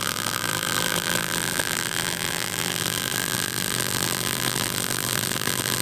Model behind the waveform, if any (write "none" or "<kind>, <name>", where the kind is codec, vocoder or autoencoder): vocoder, BigVGAN v2